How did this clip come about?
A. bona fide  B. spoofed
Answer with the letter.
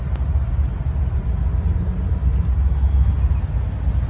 A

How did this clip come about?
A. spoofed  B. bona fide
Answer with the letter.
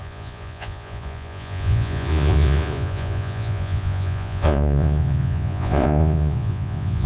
A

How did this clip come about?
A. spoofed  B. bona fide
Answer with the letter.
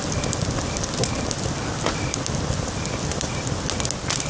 B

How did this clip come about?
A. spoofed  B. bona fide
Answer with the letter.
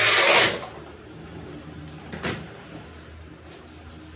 B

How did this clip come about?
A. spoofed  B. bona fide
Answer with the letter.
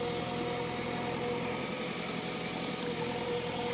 B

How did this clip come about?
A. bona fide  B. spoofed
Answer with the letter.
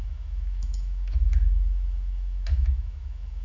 B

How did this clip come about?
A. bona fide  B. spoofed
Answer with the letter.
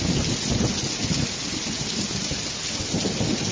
A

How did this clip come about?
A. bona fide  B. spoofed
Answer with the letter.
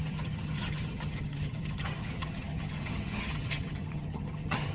B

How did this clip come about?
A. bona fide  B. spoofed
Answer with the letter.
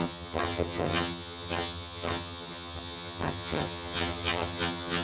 B